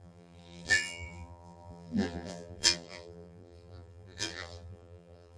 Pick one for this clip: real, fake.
fake